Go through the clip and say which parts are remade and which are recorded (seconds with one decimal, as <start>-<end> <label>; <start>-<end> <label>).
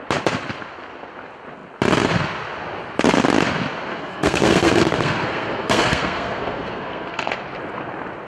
0.0-3.9 recorded; 3.9-7.3 remade; 7.3-8.3 recorded